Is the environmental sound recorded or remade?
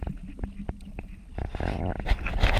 recorded